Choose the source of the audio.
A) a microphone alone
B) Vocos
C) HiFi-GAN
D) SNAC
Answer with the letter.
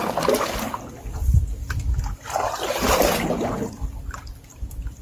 A